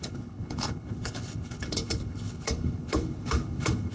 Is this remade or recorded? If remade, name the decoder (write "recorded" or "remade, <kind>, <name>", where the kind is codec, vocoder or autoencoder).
remade, codec, HILCodec